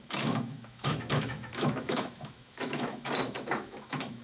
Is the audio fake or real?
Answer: fake